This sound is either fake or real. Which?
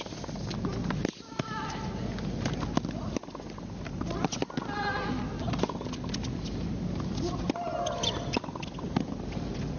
real